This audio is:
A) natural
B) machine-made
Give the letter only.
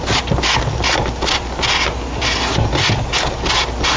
A